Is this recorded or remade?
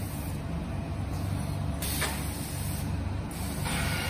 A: recorded